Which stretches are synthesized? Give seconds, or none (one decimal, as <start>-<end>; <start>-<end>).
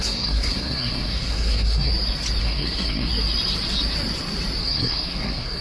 0.0-1.9; 2.4-3.1; 4.6-5.6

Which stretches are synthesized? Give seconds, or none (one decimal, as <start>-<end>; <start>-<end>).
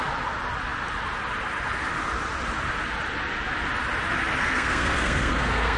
4.4-5.8